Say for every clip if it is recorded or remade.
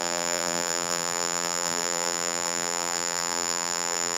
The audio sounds remade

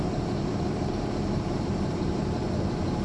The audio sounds remade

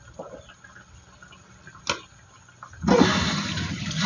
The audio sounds recorded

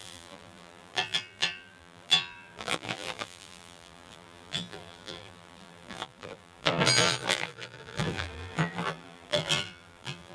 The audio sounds remade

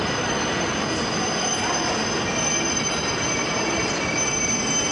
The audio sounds recorded